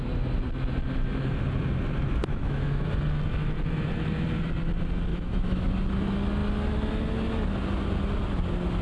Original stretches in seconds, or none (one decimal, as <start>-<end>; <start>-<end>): 0.0-2.2; 2.9-5.1; 5.7-8.8